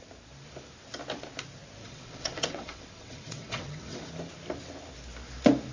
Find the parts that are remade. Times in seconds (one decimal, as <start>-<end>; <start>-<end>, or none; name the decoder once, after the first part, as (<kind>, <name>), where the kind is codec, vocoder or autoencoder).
1.8-4.1 (vocoder, WaveNeXt)